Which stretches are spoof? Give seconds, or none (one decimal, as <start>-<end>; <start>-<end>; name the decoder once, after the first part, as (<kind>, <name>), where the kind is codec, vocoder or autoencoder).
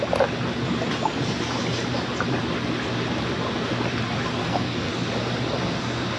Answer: 4.4-4.9 (codec, SNAC)